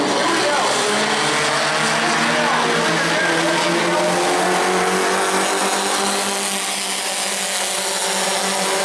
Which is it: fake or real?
real